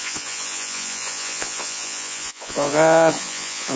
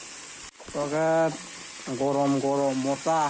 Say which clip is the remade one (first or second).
first